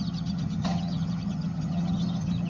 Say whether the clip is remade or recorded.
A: remade